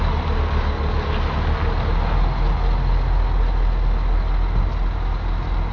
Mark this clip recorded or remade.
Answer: recorded